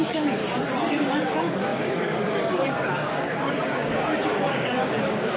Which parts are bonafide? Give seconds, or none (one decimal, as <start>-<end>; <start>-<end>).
0.4-0.9